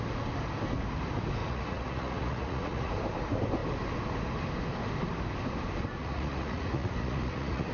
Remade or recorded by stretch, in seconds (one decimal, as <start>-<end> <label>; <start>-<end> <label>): 0.0-1.4 recorded; 1.4-2.9 remade; 2.9-6.0 recorded; 6.0-7.7 remade